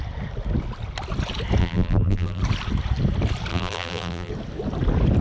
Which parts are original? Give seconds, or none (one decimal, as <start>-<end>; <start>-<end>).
0.0-1.6; 2.4-3.5; 4.3-5.2